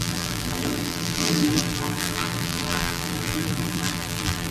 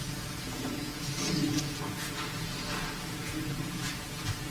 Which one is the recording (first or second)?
second